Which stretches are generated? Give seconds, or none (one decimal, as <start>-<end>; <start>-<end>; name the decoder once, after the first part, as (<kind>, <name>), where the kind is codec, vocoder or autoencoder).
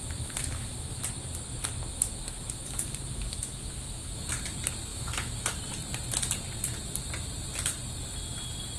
0.0-1.0 (autoencoder, DAC-VAE); 1.9-4.3; 4.9-5.6